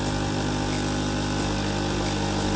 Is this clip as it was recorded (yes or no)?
yes